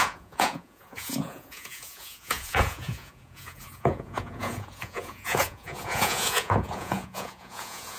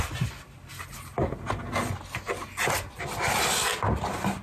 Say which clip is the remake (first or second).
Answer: first